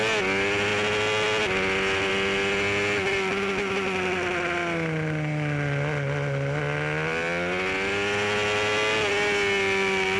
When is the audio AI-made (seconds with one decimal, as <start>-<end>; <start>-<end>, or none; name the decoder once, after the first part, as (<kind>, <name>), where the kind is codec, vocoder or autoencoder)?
none

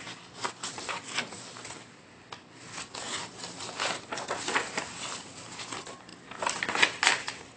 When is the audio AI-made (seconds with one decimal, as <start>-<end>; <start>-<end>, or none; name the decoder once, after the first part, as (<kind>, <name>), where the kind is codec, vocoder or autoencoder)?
none

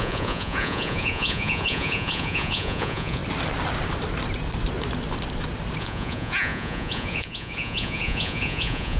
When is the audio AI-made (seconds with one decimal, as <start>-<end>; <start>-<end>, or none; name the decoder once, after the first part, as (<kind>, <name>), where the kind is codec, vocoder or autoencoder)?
0.0-3.2 (vocoder, Vocos); 5.8-9.0

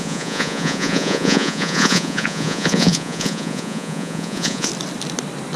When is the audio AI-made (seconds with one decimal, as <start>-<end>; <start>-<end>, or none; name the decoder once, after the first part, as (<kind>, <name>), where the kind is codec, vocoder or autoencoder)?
0.0-4.7 (vocoder, Vocos)